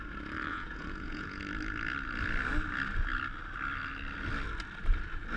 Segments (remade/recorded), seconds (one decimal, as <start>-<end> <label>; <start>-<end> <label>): 0.0-0.5 recorded; 0.5-1.4 remade; 1.4-5.4 recorded

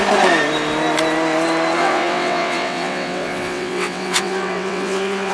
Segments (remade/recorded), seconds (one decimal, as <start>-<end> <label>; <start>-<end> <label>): 0.0-1.8 recorded; 1.8-5.3 remade

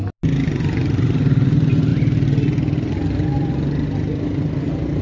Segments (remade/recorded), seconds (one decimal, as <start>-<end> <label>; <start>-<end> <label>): 0.0-5.0 recorded